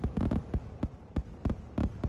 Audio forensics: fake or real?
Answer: real